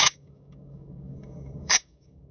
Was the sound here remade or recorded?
remade